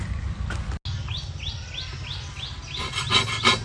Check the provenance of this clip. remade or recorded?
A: recorded